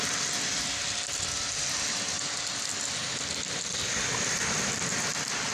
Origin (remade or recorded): recorded